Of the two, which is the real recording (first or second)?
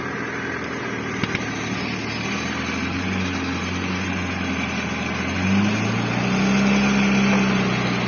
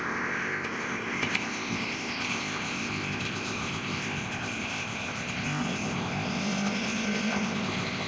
first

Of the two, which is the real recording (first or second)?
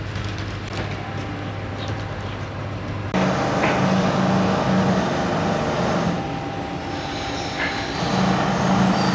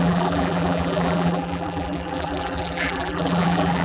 first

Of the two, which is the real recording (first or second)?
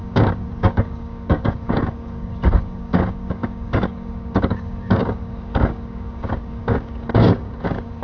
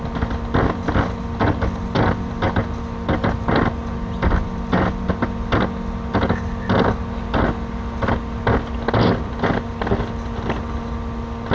second